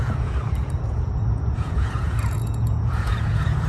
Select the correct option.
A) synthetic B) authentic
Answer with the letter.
A